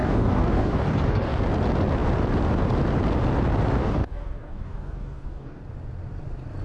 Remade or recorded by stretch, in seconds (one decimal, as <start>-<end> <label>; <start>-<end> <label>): 0.0-1.4 remade; 1.4-3.8 recorded; 3.8-5.6 remade; 5.6-6.6 recorded